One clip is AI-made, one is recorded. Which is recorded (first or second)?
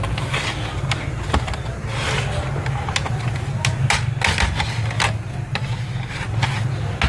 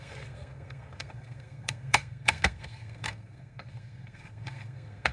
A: first